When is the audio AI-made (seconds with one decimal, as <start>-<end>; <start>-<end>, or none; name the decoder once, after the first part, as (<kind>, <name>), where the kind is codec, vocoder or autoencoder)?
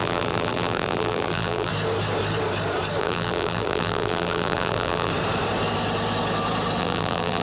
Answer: 0.0-1.7 (vocoder, BigVGAN v2); 3.0-5.1; 6.8-7.4